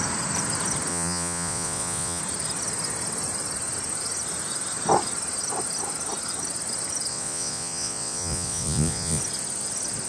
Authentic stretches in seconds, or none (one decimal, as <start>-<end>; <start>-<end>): 0.0-0.9; 2.2-7.1; 9.2-10.1